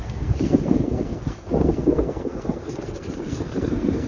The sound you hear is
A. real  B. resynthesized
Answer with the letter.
B